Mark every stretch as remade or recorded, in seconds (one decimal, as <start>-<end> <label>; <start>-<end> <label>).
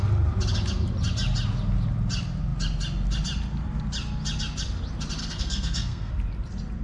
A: 0.0-5.2 recorded; 5.2-6.1 remade; 6.1-6.8 recorded